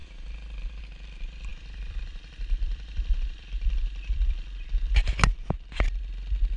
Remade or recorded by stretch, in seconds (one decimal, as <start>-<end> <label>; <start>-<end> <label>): 0.0-1.5 recorded; 1.5-4.6 remade; 4.6-6.6 recorded